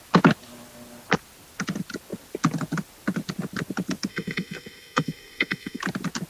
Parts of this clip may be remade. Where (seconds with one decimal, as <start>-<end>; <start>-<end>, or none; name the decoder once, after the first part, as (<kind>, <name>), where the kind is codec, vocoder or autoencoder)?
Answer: 4.1-5.8 (codec, SNAC)